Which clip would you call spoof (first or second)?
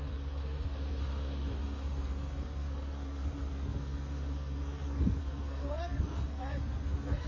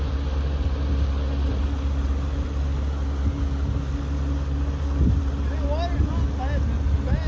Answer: first